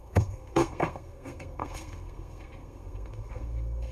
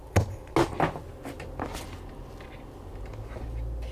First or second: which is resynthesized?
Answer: first